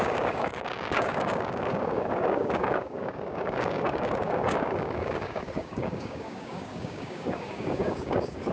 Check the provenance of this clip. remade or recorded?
remade